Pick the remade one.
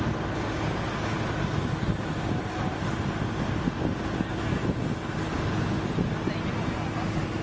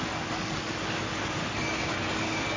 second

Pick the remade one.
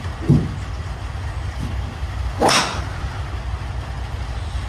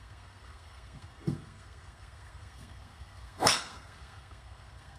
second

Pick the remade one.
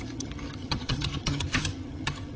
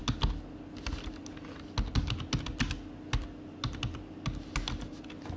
first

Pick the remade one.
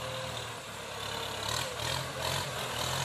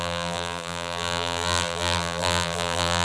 second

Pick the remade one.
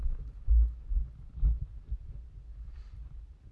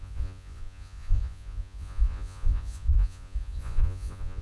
second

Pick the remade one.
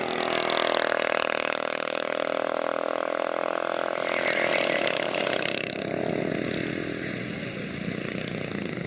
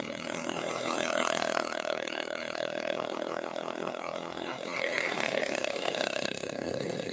second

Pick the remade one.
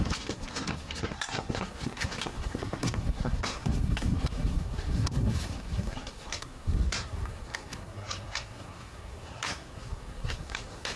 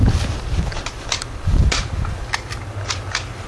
first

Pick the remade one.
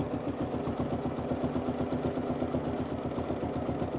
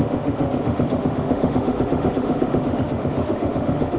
second